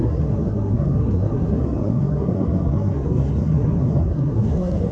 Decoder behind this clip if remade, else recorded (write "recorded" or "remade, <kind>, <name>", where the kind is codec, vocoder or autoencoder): remade, codec, SNAC